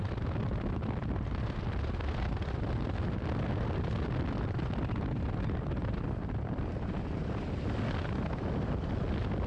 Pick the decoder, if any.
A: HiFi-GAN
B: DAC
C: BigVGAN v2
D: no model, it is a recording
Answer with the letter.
D